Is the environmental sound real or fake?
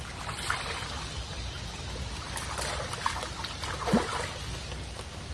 real